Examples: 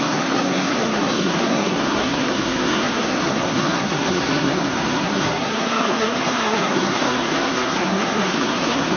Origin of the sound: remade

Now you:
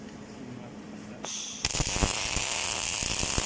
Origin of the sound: recorded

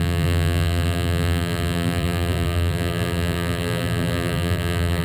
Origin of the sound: remade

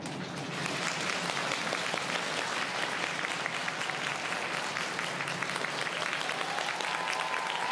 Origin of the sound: recorded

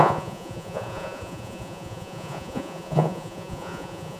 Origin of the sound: remade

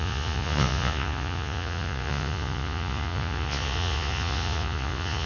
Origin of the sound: remade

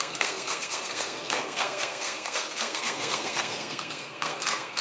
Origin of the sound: remade